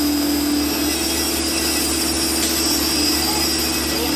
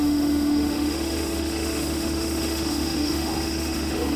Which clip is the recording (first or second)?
first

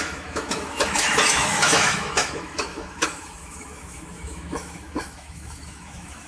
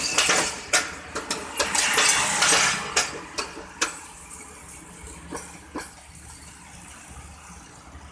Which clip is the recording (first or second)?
second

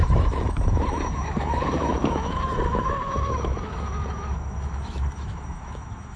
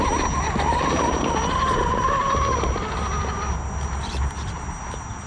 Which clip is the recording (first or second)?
second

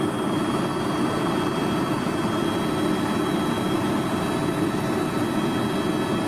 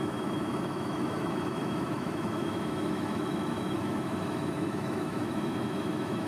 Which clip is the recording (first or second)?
first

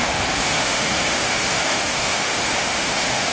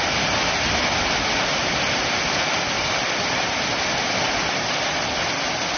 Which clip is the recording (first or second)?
second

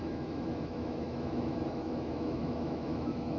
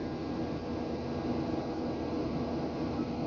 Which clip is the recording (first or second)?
second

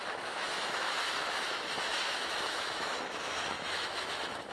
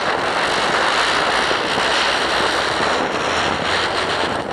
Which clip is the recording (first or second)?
second